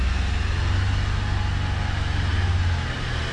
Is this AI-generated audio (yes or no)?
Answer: no